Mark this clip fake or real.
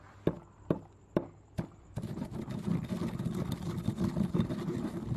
real